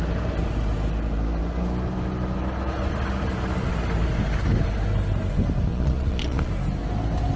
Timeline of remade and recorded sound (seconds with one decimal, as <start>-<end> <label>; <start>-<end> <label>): 0.0-5.7 recorded; 5.7-6.5 remade; 6.5-7.4 recorded